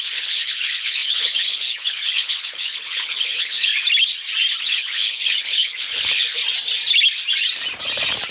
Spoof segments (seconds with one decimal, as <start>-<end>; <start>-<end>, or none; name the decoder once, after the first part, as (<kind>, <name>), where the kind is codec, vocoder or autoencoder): 0.0-3.7 (codec, HILCodec); 4.6-6.4